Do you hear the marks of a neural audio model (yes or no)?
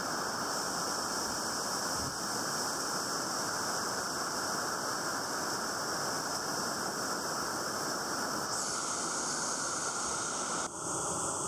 no